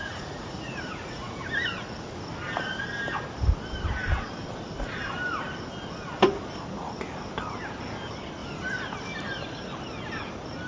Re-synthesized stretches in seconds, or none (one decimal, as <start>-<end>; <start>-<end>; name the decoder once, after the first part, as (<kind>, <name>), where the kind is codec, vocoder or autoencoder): 0.0-1.4 (vocoder, Vocos)

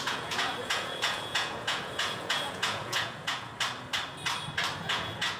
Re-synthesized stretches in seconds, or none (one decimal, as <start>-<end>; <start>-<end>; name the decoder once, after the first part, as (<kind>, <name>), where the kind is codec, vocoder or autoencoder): 0.0-3.5 (vocoder, Vocos); 4.8-5.4

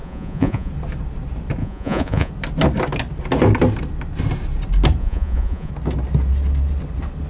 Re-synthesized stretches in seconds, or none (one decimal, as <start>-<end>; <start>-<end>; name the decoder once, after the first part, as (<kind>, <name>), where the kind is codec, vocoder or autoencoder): 0.0-0.7 (vocoder, Vocos); 1.6-2.3; 5.0-5.7

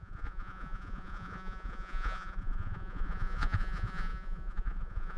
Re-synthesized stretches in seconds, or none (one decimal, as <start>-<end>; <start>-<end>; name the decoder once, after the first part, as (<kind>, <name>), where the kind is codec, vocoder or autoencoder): 0.0-5.2 (vocoder, Vocos)

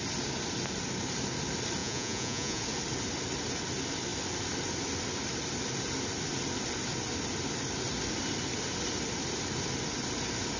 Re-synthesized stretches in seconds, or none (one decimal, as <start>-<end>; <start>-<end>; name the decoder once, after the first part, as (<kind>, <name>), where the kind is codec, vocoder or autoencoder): 1.8-2.6 (vocoder, Vocos)